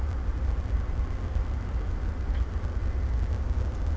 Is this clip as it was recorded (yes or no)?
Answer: yes